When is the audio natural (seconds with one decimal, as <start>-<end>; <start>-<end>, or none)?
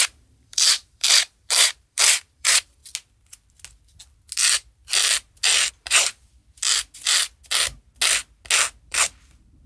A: 2.8-5.7; 6.4-8.8